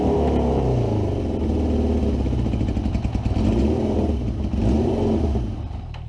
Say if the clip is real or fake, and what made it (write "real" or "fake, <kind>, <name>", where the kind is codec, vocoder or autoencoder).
real